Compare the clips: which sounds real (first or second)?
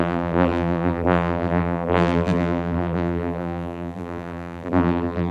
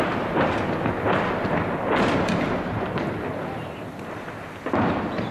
second